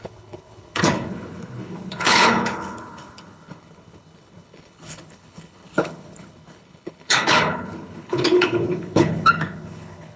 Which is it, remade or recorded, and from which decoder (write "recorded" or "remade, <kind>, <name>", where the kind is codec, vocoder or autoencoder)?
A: remade, codec, HILCodec